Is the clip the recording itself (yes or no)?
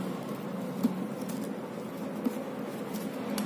yes